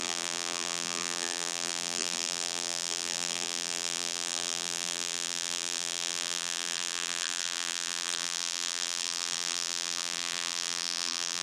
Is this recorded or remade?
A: remade